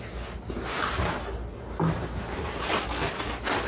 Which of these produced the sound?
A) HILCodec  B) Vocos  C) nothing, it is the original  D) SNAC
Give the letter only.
C